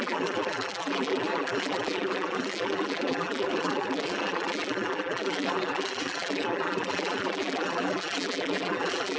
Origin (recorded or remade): remade